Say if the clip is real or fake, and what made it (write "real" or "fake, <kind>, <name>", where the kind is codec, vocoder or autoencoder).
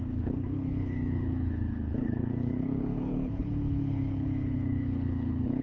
fake, codec, HILCodec